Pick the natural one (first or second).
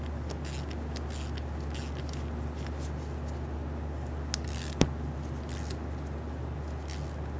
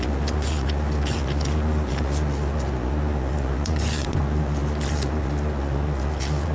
first